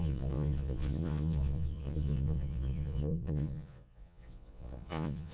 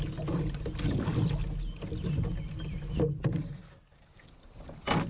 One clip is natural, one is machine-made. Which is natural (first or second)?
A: second